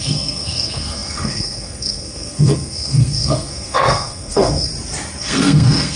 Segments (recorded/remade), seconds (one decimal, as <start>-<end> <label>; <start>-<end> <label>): 0.0-4.7 remade; 4.7-5.2 recorded; 5.2-6.0 remade